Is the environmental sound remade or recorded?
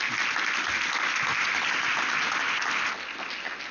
recorded